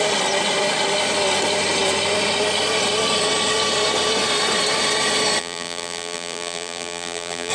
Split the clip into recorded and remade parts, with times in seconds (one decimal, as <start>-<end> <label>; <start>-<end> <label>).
0.0-5.4 recorded; 5.4-7.5 remade